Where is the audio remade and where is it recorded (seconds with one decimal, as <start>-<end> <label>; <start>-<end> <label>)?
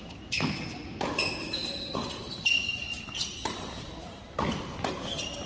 0.0-5.5 recorded